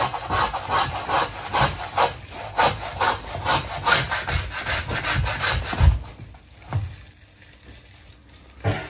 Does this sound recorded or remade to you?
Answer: recorded